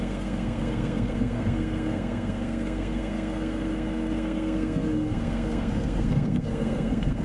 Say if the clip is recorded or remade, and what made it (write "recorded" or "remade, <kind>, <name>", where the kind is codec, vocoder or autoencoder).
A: remade, codec, SNAC